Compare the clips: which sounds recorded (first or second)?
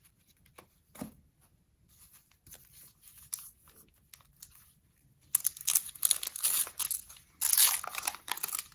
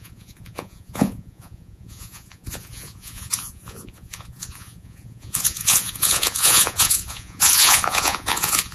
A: first